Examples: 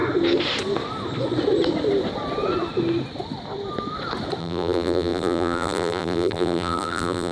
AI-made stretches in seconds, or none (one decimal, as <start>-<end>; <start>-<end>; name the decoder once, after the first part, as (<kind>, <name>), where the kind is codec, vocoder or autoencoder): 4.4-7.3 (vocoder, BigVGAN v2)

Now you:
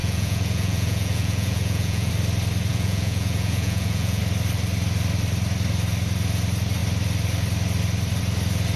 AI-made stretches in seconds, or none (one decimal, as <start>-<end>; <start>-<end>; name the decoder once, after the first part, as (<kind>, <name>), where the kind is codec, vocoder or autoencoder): 0.0-2.1 (vocoder, Vocos); 2.7-4.2

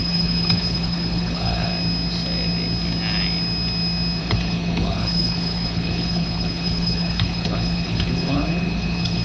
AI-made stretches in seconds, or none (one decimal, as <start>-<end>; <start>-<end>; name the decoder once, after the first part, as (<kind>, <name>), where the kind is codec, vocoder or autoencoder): 0.0-1.7 (codec, HILCodec); 4.2-9.2

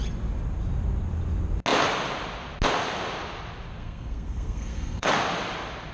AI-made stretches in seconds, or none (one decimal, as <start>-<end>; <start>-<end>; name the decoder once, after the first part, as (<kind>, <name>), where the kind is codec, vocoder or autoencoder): 3.8-5.1 (codec, SNAC)

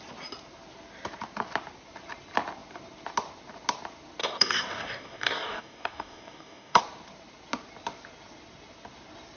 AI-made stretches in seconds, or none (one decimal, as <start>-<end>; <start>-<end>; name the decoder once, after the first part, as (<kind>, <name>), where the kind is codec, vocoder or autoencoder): 4.2-6.8 (codec, DAC)